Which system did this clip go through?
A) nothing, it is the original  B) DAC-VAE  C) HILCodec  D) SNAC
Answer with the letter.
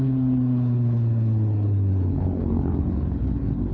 C